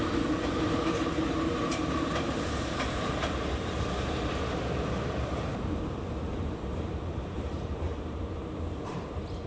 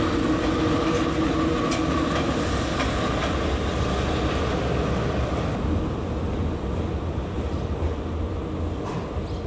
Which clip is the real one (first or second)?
second